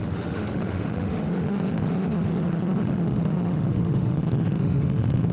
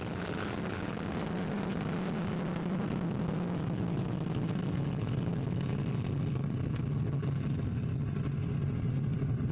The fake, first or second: first